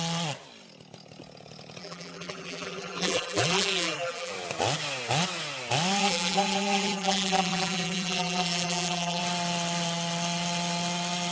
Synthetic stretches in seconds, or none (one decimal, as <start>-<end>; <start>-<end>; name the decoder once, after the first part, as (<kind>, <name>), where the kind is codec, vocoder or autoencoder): 1.8-4.3 (vocoder, BigVGAN v2); 6.0-9.2